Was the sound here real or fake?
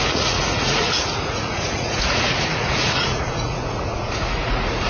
fake